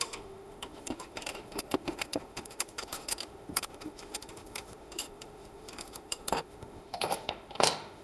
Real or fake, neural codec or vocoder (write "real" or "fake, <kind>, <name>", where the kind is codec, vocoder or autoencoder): fake, autoencoder, DAC-VAE